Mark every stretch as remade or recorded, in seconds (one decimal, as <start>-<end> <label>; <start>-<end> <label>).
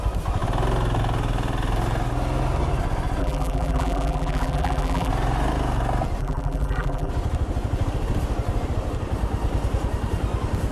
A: 0.0-3.2 recorded; 3.2-5.1 remade; 5.1-6.2 recorded; 6.2-7.1 remade; 7.1-10.7 recorded